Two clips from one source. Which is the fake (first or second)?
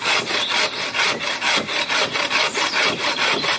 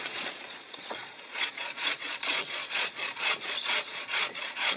second